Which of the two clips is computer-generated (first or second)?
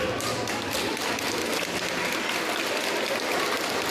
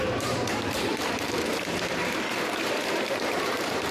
second